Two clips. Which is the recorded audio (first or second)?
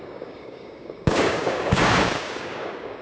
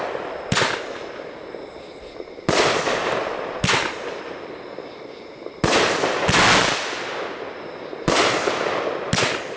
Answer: second